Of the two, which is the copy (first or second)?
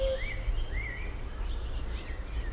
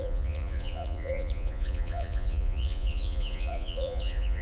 second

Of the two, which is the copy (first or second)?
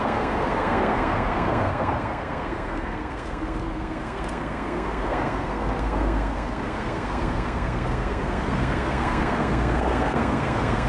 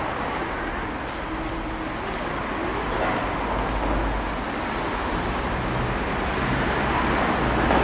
first